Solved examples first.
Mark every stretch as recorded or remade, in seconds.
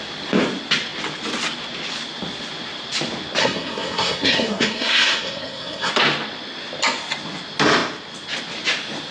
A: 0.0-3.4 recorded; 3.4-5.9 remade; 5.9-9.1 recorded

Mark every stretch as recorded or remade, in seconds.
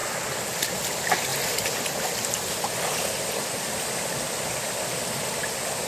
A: 0.0-5.9 recorded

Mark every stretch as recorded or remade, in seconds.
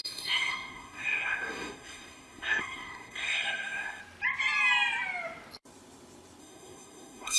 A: 0.0-4.0 remade; 4.0-6.4 recorded; 6.4-7.4 remade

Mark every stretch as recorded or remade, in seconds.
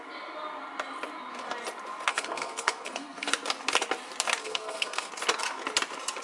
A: 0.0-2.1 recorded; 2.1-3.3 remade; 3.3-4.4 recorded; 4.4-5.1 remade; 5.1-6.2 recorded